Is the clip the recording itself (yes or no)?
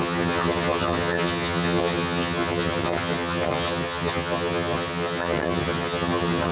no